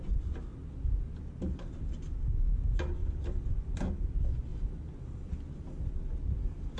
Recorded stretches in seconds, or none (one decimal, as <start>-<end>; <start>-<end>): 0.0-4.5; 5.9-6.8